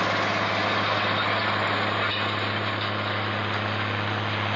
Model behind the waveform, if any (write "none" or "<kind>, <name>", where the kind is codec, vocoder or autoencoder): none